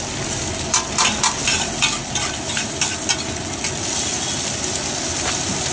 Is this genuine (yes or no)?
yes